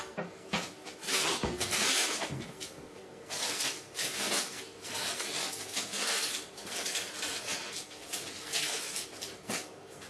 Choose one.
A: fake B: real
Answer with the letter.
A